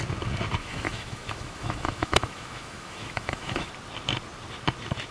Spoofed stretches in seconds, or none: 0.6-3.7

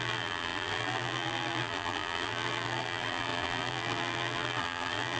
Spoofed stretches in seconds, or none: 0.0-5.2

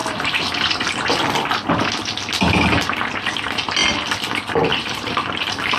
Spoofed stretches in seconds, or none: 4.7-5.3

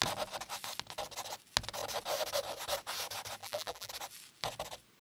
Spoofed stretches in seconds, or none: 3.4-3.9

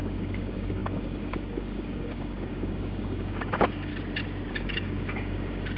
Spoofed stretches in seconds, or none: 0.0-3.9; 4.5-5.8

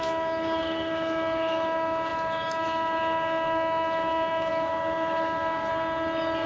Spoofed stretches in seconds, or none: 0.0-5.7

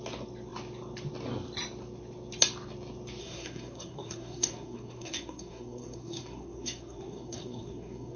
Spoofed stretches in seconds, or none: 3.2-8.2